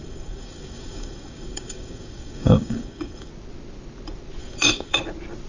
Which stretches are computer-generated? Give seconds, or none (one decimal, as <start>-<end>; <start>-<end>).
0.0-3.3; 4.4-5.0